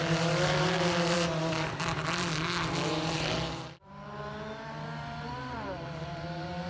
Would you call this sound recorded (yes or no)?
no